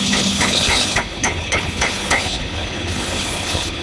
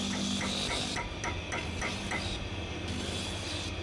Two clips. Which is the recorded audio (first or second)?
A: second